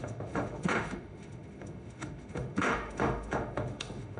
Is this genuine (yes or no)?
no